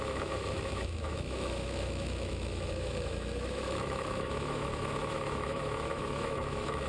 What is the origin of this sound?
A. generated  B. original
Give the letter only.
A